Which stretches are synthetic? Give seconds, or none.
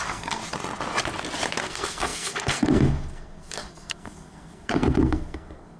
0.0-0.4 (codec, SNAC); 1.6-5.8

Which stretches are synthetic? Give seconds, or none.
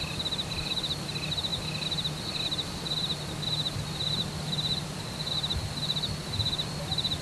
none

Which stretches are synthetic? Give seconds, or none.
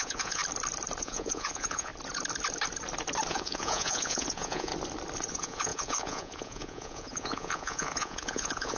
0.0-0.4 (vocoder, Vocos); 1.0-1.9; 3.3-4.7; 5.3-8.8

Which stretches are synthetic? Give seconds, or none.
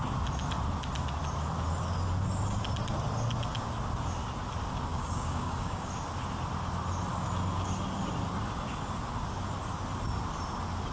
4.9-5.9 (codec, DAC)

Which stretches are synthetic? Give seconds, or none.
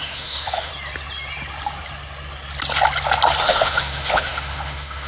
0.0-0.7 (autoencoder, DAC-VAE); 3.4-5.1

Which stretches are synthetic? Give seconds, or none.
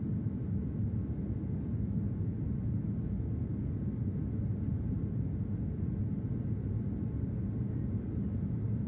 none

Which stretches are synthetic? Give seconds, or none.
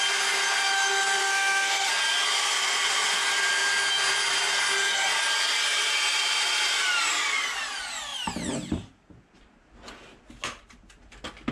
1.2-1.9 (codec, SNAC)